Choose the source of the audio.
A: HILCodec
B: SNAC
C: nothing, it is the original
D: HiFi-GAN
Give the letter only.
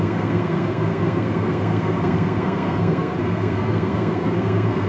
B